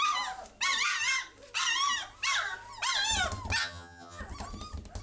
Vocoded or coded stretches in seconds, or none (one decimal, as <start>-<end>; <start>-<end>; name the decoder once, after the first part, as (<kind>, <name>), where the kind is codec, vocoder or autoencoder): 3.6-4.2 (vocoder, HiFi-GAN)

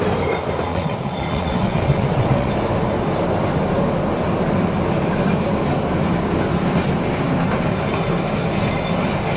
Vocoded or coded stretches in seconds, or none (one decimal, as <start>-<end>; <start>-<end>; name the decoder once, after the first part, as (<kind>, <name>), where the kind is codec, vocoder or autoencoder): 0.7-2.5 (vocoder, WaveNeXt)

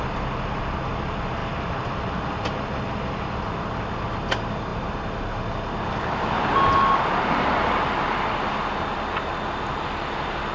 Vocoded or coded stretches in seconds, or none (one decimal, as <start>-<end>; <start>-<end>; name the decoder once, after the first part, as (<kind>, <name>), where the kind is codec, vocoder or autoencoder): none

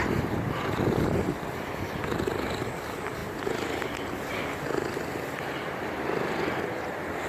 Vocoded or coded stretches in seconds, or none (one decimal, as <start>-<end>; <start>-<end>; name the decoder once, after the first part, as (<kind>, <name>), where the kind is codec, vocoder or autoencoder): none

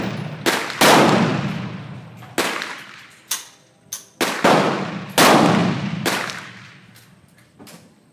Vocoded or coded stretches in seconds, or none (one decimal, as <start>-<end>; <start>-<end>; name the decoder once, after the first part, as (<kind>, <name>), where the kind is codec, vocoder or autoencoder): 5.6-6.7 (vocoder, BigVGAN v2)

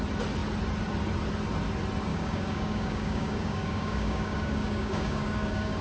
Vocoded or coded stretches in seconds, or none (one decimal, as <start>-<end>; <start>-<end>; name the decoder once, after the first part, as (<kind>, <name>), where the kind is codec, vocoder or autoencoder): 2.1-5.8 (codec, DAC)

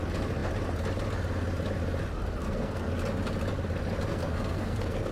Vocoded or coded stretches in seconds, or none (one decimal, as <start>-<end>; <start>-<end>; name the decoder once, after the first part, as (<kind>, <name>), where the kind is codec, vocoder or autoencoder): 2.4-2.9 (codec, SNAC); 4.1-5.1